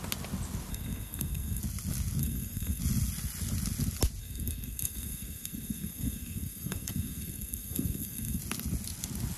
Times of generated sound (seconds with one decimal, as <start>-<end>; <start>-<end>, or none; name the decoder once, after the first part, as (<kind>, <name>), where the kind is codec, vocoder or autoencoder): 0.7-1.6 (codec, SNAC); 2.2-2.8; 4.2-8.4